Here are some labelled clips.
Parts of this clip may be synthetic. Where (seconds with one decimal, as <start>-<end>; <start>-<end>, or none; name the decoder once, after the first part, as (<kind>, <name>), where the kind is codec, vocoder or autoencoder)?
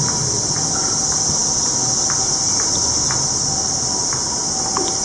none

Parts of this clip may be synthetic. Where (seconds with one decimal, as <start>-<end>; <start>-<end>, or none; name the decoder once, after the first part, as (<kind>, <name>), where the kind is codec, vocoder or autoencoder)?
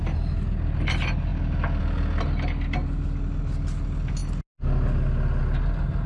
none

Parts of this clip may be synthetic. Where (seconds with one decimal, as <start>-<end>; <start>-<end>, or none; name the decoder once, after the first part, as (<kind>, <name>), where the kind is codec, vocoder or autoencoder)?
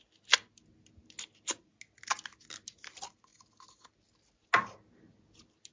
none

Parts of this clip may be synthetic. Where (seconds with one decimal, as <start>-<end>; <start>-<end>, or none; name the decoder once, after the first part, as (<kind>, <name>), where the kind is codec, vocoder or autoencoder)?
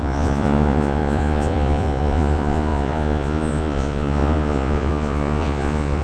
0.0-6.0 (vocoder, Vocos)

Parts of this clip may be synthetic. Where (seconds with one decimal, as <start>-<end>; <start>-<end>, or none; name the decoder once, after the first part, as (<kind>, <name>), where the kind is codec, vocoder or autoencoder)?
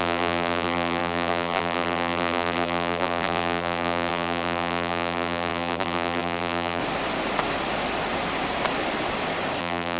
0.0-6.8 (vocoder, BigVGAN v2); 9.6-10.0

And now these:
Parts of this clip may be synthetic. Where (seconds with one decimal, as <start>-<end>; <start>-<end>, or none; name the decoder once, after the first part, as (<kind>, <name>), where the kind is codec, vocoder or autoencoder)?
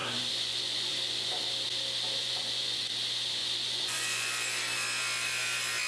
0.0-1.4 (vocoder, Vocos); 2.2-2.9; 3.4-4.3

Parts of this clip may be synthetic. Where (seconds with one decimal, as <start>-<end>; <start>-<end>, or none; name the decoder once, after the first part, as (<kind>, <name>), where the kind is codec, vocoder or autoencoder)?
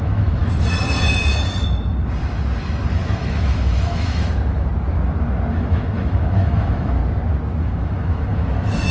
0.0-0.4 (autoencoder, DAC-VAE); 2.9-4.7; 5.5-7.0; 7.6-8.9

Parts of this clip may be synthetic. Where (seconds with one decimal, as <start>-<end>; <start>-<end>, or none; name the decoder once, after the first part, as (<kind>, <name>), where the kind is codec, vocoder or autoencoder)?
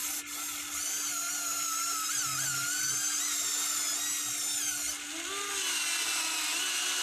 none